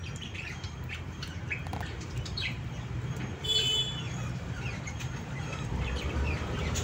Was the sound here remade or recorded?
remade